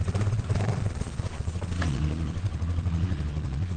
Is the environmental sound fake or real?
fake